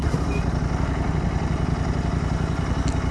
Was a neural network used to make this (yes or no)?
no